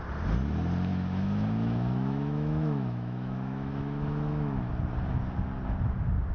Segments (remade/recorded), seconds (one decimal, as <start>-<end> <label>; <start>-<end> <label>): 0.0-0.9 recorded; 0.9-4.7 remade; 4.7-6.3 recorded